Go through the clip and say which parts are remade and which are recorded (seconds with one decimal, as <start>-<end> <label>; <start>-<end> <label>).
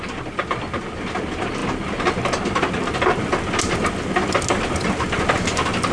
0.0-5.9 recorded